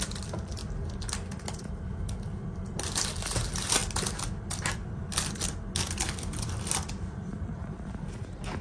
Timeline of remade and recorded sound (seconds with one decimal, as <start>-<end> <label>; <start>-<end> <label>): 0.0-8.6 recorded